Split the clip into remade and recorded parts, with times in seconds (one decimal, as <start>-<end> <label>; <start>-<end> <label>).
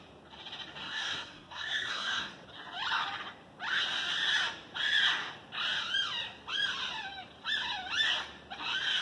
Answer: 0.0-0.8 recorded; 0.8-2.3 remade; 2.3-9.0 recorded